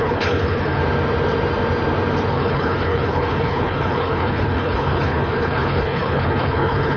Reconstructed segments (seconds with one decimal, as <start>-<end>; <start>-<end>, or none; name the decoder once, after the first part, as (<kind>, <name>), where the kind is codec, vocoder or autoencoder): 0.0-0.8 (codec, HILCodec); 2.3-7.0